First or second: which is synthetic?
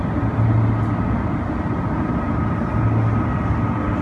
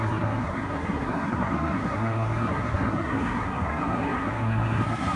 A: second